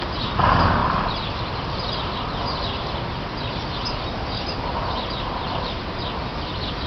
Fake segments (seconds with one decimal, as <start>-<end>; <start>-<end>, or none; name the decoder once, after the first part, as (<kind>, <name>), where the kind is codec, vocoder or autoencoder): none